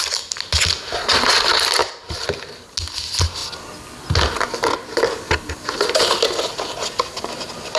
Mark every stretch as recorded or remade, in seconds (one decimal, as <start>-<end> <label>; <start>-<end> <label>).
0.0-7.8 recorded